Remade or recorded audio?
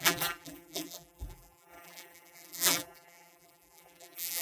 remade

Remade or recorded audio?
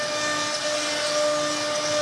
recorded